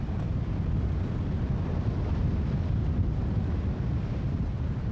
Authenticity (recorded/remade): recorded